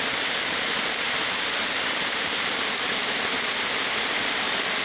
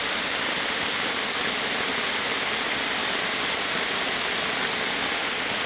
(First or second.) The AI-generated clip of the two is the first